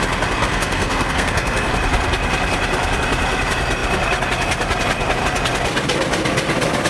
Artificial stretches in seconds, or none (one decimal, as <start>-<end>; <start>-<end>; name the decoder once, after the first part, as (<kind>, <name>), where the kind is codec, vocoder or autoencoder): 0.4-1.7 (codec, SNAC)